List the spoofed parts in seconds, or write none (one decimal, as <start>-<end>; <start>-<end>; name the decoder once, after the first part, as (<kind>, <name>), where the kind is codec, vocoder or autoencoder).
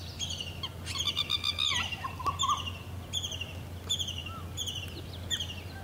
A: none